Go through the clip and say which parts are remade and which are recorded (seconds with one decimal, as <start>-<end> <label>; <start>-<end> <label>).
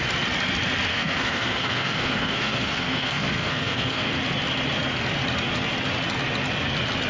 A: 0.0-0.9 recorded; 0.9-4.1 remade; 4.1-7.1 recorded